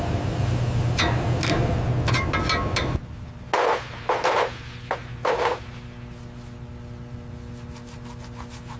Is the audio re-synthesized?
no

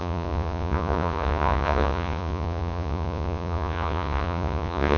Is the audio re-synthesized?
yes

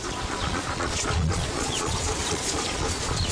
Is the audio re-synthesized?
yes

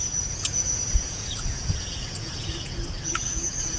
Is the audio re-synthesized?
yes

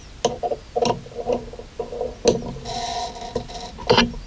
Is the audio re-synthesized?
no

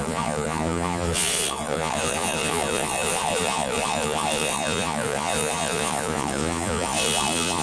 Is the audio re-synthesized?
yes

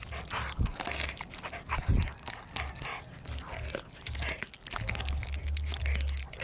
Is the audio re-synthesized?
no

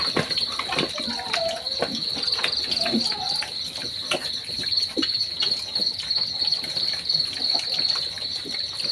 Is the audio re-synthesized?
no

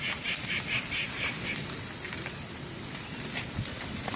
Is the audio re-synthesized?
no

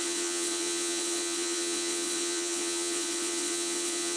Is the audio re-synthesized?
yes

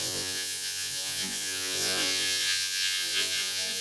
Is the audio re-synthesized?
yes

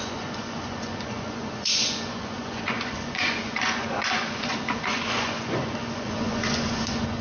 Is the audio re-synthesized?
yes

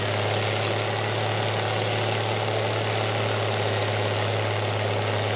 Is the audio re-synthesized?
no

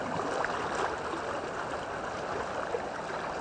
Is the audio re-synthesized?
no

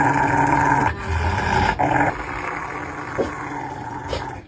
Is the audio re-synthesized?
no